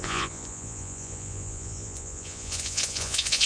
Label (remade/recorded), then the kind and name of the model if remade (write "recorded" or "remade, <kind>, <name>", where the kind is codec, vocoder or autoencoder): remade, vocoder, Vocos